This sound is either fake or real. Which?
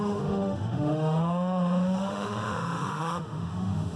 fake